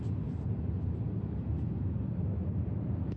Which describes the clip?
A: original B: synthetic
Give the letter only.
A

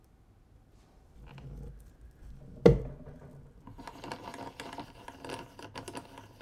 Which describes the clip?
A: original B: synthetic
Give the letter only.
A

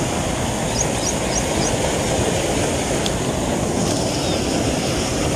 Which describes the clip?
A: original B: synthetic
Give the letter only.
A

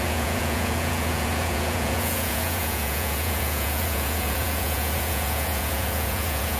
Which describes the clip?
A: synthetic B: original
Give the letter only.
A